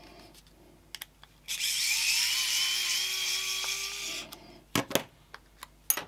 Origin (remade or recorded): recorded